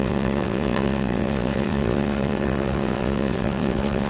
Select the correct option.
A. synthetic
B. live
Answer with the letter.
A